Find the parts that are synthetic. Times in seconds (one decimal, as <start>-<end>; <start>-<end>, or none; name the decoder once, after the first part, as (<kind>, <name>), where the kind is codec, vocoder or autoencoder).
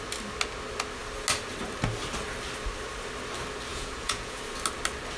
3.7-4.4 (vocoder, Vocos)